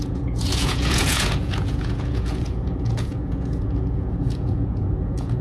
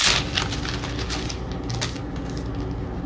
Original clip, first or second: second